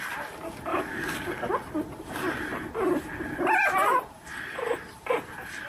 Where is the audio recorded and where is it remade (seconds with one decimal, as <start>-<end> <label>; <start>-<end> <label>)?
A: 0.0-0.7 recorded; 0.7-1.5 remade; 1.5-5.7 recorded